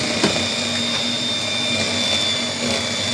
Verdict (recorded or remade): recorded